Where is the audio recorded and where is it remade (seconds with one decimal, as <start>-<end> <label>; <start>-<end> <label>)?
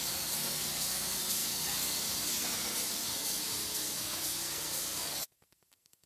0.0-6.1 remade